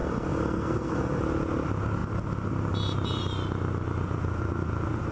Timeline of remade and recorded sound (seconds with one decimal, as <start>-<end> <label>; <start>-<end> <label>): 0.0-1.2 remade; 1.2-5.1 recorded